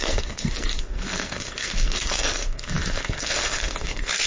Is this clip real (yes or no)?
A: no